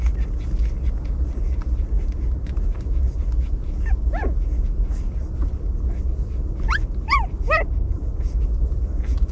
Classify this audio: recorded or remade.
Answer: recorded